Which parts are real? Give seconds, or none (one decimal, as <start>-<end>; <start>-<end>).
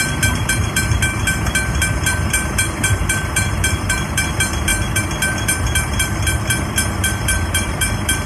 0.0-8.3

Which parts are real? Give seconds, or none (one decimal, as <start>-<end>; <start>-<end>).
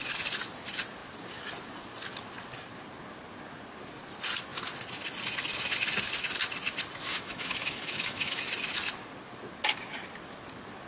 0.0-7.1; 8.4-10.9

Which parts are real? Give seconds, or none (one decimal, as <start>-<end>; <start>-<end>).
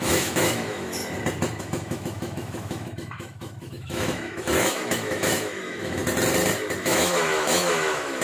1.0-1.6; 6.0-6.8